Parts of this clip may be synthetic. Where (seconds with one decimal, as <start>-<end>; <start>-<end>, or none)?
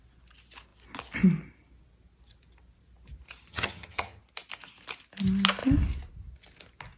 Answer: 3.5-4.2